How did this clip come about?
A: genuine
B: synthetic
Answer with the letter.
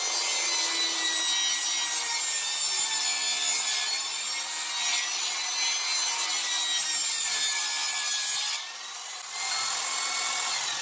A